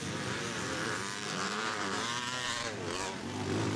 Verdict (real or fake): fake